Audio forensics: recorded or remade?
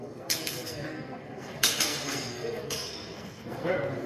remade